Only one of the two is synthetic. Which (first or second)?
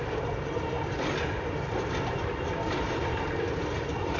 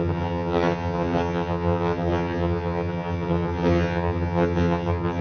second